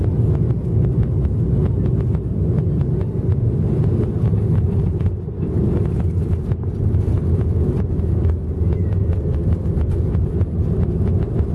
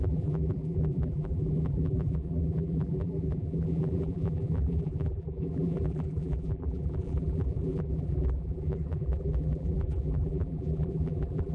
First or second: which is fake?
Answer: second